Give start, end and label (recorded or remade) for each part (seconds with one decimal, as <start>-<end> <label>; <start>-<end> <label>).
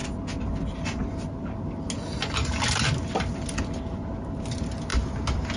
0.0-5.6 recorded